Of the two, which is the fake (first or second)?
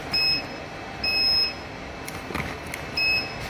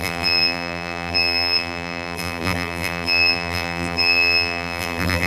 second